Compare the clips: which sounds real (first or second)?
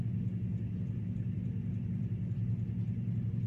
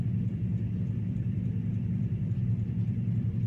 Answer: first